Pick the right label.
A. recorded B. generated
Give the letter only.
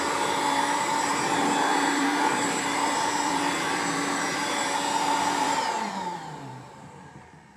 B